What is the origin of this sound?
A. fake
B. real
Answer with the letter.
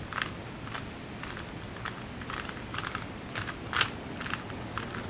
B